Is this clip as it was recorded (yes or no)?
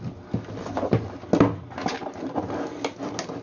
yes